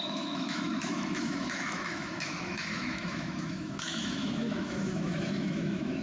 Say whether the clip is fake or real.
fake